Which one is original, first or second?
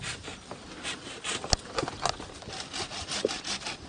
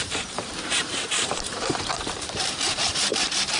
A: first